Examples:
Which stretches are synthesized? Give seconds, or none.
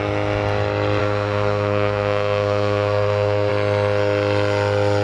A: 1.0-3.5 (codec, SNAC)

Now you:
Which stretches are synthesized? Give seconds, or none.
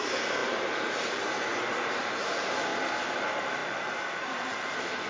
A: 0.0-2.7 (vocoder, BigVGAN v2); 3.2-5.1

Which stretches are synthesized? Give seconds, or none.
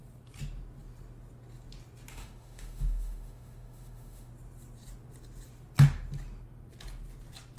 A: 2.1-4.3 (autoencoder, DAC-VAE)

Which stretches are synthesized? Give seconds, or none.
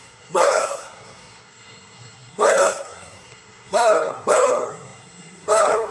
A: 0.0-5.9 (codec, SNAC)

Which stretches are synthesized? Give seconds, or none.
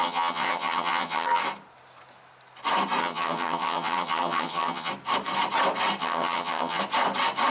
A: 0.0-1.4 (vocoder, HiFi-GAN); 3.0-4.9; 6.0-6.8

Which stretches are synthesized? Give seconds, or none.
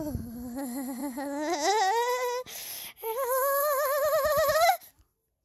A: none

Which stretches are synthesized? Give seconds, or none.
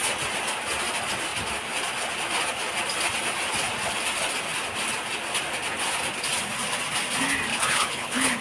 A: 7.5-8.4 (codec, HILCodec)